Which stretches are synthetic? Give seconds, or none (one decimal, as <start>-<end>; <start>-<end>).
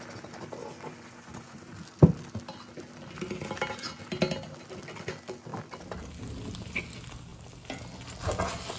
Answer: 0.6-1.7